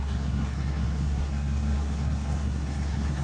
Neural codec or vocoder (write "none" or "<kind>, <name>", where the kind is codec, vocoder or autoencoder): codec, SNAC